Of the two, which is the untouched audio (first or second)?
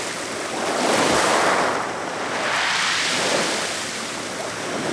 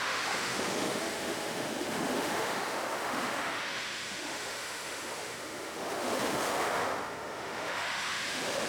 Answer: first